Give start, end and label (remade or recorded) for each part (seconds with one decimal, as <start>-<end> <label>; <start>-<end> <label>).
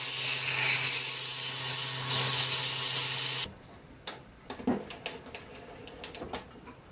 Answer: 0.0-6.9 recorded